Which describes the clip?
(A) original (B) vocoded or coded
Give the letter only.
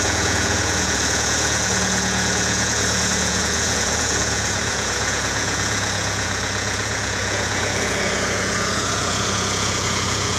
B